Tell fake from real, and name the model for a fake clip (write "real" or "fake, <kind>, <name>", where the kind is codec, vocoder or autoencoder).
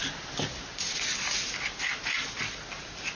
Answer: real